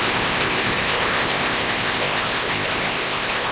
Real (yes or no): no